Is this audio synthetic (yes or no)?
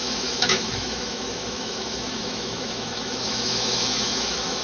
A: yes